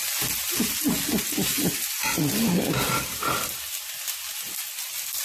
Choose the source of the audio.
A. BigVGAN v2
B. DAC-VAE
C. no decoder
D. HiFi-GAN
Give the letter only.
C